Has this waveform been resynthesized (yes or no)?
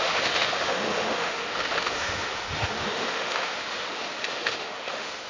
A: yes